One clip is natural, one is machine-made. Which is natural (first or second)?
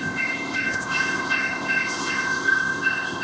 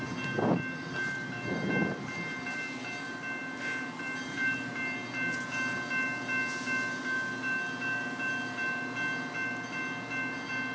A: second